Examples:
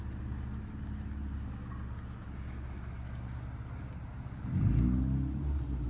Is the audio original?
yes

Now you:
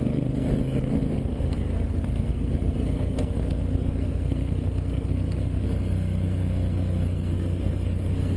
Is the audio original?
no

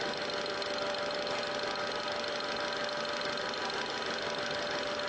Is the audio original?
yes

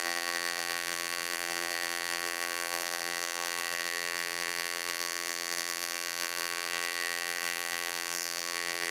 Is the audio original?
no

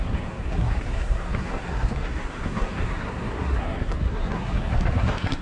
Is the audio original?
no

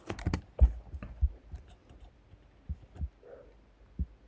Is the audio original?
yes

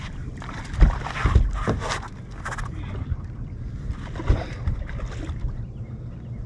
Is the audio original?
yes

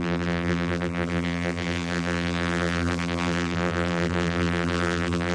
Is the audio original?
no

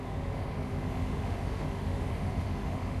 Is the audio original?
no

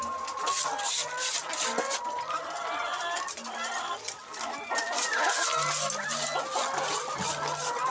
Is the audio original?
yes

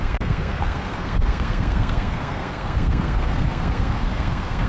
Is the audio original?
no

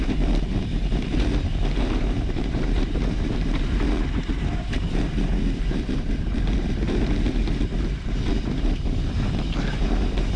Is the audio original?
no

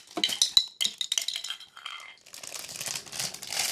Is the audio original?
yes